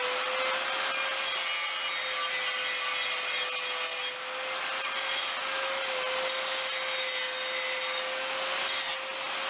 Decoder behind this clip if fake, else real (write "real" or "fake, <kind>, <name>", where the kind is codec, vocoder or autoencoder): real